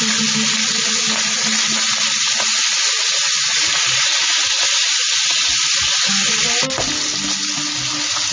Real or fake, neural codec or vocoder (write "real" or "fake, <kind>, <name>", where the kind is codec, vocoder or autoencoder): real